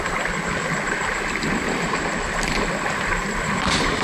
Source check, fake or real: real